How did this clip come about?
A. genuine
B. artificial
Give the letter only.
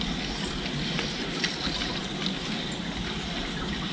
A